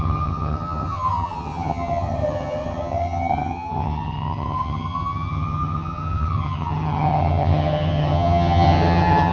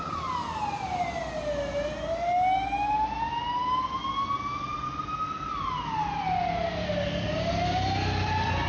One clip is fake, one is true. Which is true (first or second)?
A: second